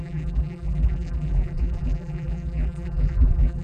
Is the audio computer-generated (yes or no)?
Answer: yes